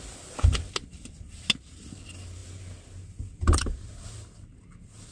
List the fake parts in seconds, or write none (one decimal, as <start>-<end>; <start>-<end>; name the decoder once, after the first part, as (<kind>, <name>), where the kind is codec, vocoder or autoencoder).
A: none